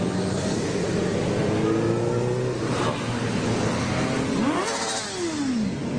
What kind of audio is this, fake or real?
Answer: real